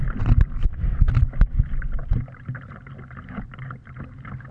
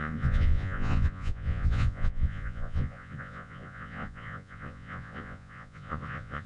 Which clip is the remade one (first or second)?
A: second